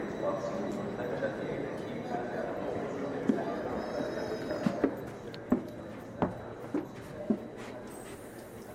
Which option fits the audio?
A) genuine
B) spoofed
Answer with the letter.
A